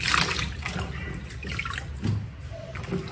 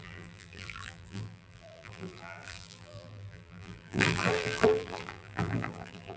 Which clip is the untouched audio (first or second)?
first